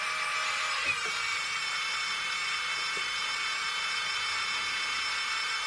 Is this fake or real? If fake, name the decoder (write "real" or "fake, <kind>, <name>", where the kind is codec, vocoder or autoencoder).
real